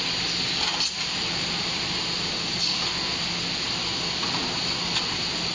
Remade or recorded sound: recorded